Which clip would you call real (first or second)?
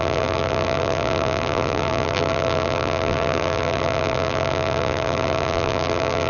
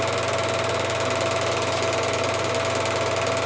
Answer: second